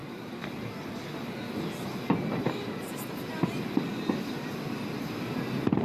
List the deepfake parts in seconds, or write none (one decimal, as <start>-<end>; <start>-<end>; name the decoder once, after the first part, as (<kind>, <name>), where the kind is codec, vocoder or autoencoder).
none